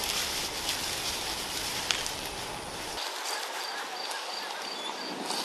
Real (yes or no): yes